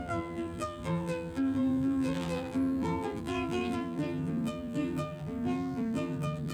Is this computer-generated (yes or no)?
yes